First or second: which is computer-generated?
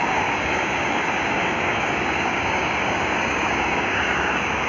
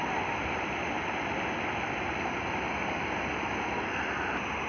first